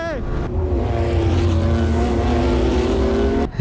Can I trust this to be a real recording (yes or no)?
yes